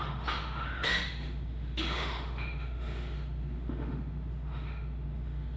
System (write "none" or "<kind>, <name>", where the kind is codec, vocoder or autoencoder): autoencoder, DAC-VAE